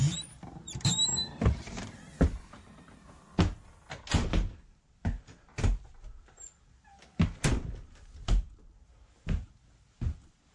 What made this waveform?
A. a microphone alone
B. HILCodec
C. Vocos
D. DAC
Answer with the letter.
A